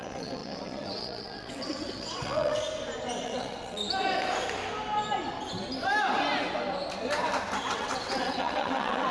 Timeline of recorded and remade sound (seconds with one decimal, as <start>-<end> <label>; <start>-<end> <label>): 0.0-2.6 remade; 2.6-3.2 recorded; 3.2-3.8 remade; 3.8-7.7 recorded; 7.7-9.1 remade